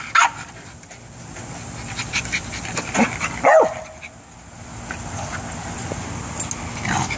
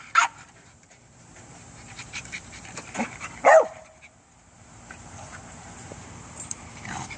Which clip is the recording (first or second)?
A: first